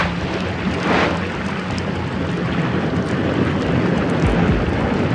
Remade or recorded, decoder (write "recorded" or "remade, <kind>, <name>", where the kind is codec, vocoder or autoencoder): recorded